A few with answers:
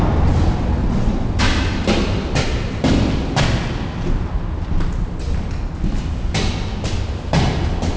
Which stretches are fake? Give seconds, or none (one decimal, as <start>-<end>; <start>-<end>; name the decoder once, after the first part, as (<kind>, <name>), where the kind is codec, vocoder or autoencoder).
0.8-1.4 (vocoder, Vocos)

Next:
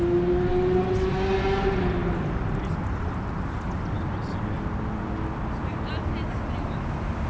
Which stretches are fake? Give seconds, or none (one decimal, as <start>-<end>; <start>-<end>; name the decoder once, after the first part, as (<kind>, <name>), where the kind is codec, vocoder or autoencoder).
none

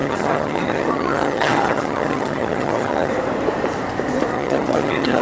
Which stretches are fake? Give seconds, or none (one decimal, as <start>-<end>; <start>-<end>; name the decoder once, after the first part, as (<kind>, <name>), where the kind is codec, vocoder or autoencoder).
0.0-3.1 (vocoder, HiFi-GAN); 4.3-5.2